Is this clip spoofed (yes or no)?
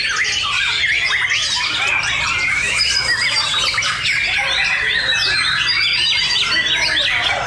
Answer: no